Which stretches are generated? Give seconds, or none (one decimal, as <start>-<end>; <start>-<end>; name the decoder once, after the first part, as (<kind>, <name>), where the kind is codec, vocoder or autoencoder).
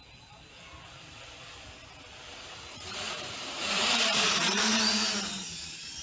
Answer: 2.5-4.9 (vocoder, Vocos)